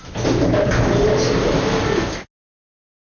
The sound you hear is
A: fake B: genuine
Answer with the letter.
B